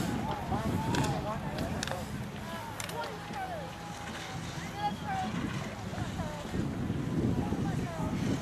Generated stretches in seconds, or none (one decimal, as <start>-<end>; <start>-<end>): none